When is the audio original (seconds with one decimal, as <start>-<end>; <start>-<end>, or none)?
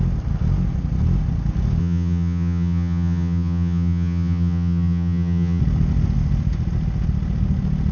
0.0-1.8; 5.6-7.9